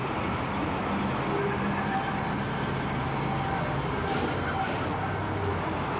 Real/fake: real